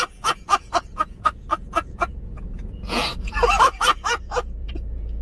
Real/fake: fake